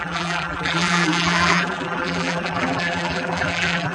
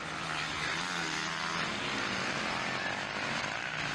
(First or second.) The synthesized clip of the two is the first